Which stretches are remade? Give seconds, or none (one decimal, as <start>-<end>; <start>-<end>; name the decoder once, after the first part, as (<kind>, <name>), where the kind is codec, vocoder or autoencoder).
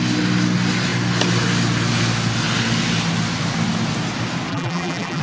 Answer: 4.5-5.2 (vocoder, BigVGAN v2)